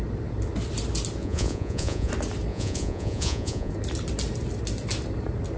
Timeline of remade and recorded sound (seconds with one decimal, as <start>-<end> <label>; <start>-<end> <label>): 0.0-1.2 recorded; 1.2-2.1 remade; 2.1-2.5 recorded; 2.5-3.7 remade; 3.7-5.6 recorded